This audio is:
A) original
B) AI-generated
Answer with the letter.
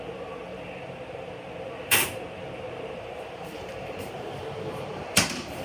B